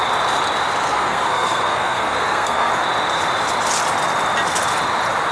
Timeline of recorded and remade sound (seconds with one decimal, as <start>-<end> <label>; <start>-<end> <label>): 0.0-0.8 recorded; 0.8-2.7 remade; 2.7-5.3 recorded